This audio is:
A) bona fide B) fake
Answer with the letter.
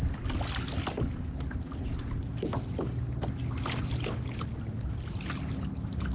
A